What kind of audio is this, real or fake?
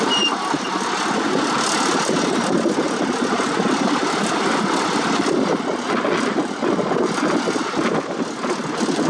real